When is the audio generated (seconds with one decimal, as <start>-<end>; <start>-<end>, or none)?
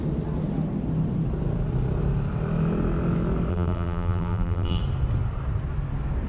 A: 3.5-4.8